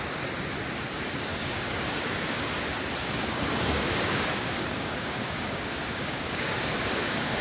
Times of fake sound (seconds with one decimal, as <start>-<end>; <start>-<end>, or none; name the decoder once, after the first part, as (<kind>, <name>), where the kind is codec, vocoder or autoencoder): 1.3-2.4 (codec, DAC); 3.0-7.4